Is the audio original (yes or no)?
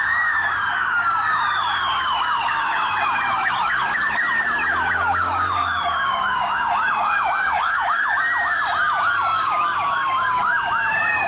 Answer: no